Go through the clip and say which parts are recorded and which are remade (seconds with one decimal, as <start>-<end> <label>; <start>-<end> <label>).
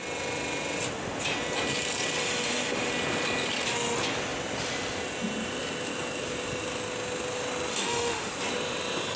0.0-2.2 recorded; 2.2-2.9 remade; 2.9-7.7 recorded; 7.7-8.3 remade; 8.3-9.2 recorded